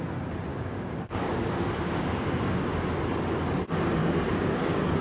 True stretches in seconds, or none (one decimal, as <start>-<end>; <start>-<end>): 0.0-0.5; 2.8-4.0